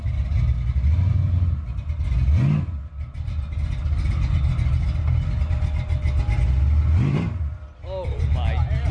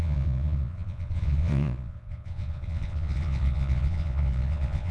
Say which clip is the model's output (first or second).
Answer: second